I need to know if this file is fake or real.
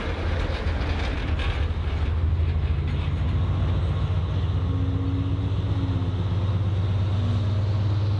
real